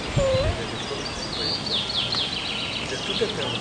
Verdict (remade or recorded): recorded